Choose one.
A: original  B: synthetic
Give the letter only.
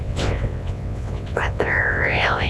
B